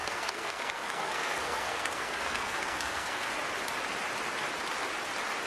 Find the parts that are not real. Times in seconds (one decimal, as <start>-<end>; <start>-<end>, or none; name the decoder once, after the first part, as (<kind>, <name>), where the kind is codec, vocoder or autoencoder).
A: 0.0-3.3 (codec, SNAC)